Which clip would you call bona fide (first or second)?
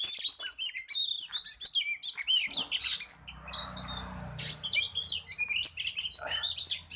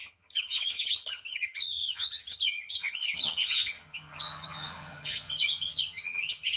first